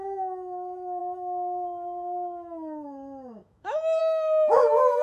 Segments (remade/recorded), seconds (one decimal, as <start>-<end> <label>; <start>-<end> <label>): 0.0-5.0 remade